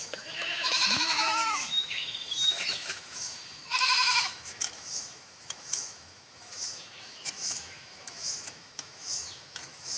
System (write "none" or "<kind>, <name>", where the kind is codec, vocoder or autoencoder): autoencoder, DAC-VAE